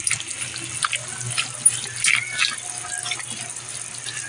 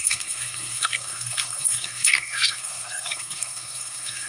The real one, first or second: first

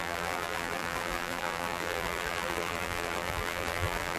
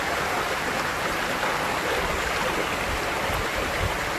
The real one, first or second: second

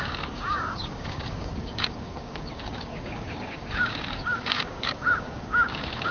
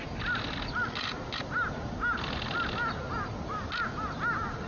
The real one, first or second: second